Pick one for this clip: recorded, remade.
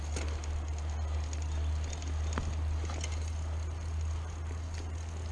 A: recorded